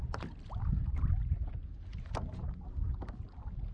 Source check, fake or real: real